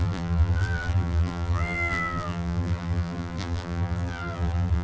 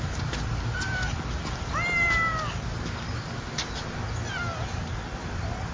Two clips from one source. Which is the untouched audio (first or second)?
second